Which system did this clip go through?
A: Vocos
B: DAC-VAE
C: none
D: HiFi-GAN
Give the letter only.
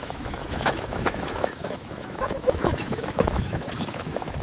B